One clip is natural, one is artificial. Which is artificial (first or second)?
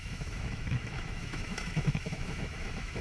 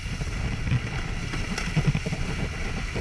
first